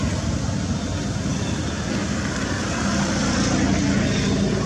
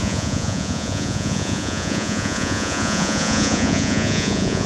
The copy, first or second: second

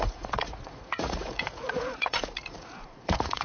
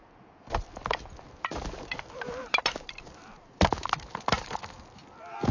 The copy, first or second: first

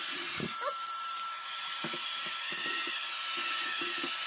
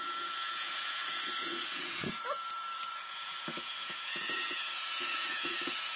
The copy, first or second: second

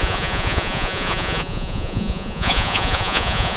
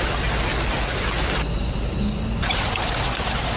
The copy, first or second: first